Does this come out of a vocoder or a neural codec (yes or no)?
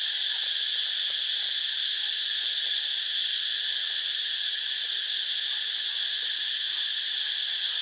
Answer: no